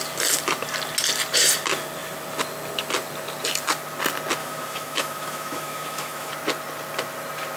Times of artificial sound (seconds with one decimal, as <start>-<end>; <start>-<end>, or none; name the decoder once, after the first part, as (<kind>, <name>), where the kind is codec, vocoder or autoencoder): 4.4-6.3 (autoencoder, DAC-VAE)